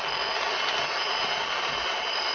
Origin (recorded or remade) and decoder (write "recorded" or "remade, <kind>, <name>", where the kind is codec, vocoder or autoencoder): recorded